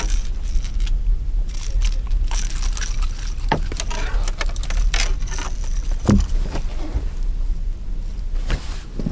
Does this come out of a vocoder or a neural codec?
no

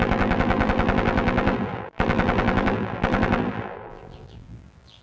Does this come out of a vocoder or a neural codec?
yes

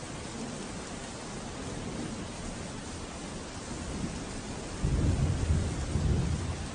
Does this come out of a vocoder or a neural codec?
no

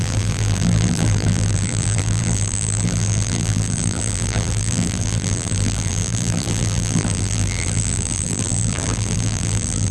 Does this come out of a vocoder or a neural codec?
yes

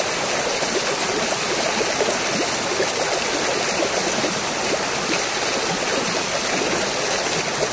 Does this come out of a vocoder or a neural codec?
no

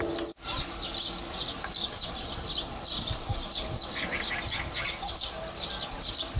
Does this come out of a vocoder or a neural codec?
no